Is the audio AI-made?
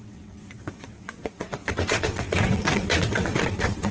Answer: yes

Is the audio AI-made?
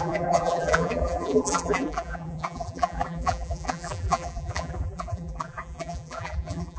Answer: yes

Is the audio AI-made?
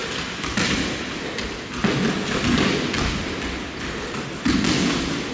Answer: no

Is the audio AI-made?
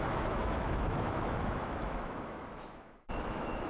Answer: yes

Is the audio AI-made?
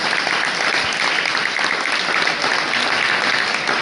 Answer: no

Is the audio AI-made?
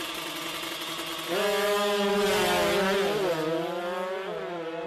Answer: no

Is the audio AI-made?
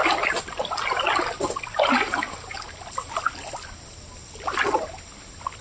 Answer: no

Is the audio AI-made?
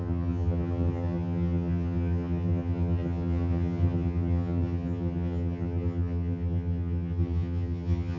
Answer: yes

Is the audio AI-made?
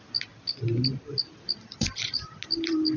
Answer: no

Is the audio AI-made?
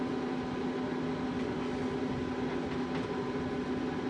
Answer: no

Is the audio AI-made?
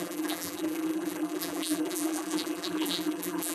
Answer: yes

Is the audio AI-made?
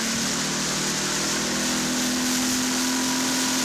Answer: no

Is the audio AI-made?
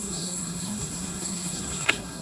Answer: yes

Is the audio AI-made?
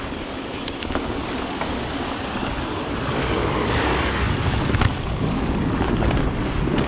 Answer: yes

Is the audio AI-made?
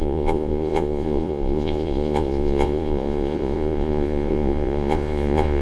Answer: yes